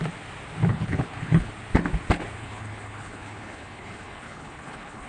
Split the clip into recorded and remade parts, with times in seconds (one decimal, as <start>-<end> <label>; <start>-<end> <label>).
0.0-0.7 recorded; 0.7-1.5 remade; 1.5-2.4 recorded; 2.4-5.1 remade